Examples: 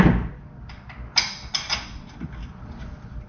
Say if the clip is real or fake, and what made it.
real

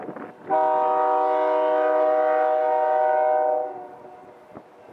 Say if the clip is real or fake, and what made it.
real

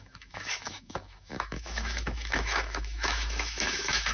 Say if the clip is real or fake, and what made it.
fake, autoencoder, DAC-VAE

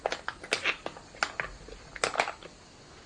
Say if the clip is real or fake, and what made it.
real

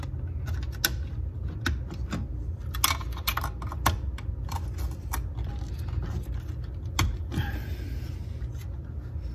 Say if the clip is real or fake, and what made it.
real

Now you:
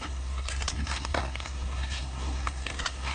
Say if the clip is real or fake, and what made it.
fake, codec, SNAC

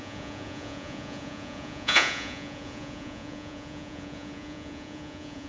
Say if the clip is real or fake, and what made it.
fake, vocoder, Vocos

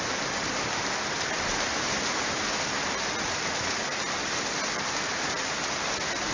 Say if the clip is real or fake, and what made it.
real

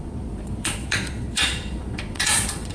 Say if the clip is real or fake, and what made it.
fake, vocoder, Vocos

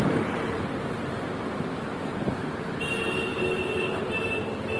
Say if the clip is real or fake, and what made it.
fake, vocoder, BigVGAN v2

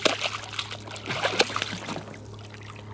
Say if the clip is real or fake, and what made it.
real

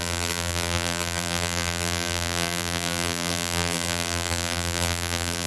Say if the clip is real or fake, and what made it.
fake, vocoder, BigVGAN v2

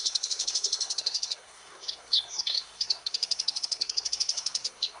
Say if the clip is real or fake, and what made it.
fake, codec, SNAC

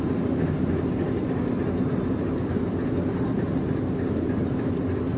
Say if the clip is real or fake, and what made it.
real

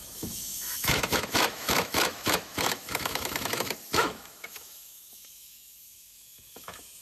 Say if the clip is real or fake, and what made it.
fake, autoencoder, DAC-VAE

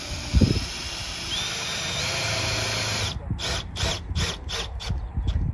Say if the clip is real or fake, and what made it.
real